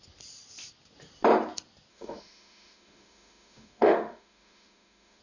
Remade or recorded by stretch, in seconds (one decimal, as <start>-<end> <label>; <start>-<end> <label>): 0.0-1.9 recorded; 1.9-5.2 remade